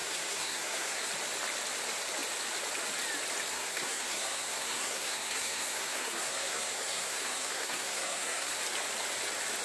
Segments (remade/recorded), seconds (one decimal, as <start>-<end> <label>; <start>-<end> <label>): 0.0-1.1 remade; 1.1-3.5 recorded; 3.5-8.6 remade; 8.6-9.6 recorded